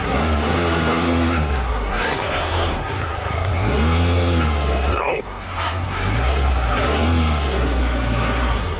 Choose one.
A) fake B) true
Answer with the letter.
A